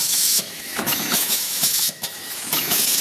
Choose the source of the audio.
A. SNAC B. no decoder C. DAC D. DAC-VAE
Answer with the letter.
D